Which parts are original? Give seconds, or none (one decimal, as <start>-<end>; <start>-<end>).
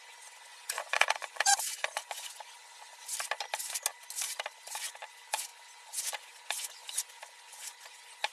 2.9-4.8